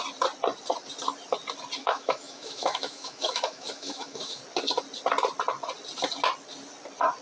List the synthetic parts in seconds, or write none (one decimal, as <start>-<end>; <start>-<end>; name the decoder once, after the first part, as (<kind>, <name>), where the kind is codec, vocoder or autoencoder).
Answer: 1.8-4.4 (autoencoder, DAC-VAE)